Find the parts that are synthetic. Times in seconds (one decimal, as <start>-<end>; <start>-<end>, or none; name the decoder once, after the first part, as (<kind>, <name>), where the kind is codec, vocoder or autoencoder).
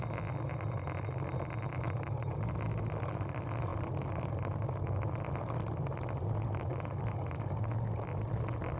none